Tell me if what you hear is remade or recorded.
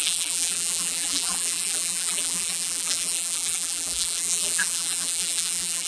remade